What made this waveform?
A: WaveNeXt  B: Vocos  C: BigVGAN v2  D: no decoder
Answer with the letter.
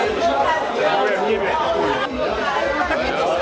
D